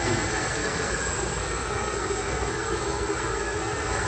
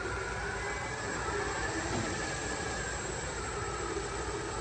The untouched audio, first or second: second